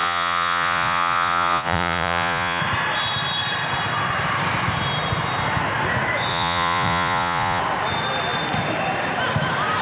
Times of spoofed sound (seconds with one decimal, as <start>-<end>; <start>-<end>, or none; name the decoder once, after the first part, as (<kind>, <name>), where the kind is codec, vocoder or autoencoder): 0.0-2.6 (vocoder, Vocos); 6.3-7.6